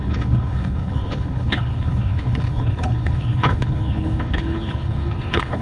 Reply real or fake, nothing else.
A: fake